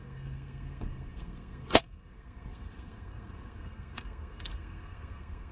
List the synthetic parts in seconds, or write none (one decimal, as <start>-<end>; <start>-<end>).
0.0-5.5